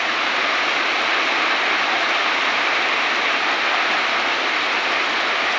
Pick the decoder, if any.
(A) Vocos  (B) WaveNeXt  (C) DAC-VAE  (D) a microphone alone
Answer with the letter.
D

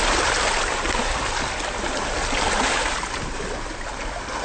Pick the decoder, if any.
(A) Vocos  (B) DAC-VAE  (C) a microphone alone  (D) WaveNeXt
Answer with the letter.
C